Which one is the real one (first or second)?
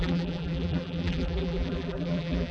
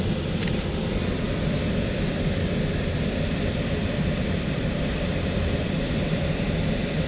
second